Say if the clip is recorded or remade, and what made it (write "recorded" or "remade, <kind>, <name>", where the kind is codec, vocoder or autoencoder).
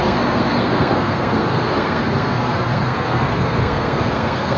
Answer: remade, codec, SNAC